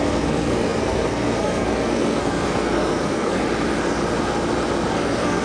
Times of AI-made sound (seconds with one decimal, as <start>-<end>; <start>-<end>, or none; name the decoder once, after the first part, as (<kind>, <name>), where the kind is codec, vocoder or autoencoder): 0.0-3.4 (codec, SNAC); 4.9-5.4